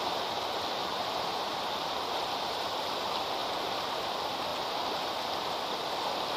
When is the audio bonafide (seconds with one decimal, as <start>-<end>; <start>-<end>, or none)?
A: 0.0-0.8; 2.9-4.5; 5.0-6.4